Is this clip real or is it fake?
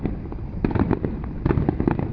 real